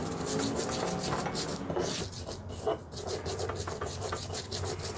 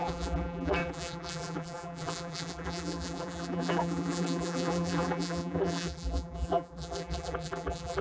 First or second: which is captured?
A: first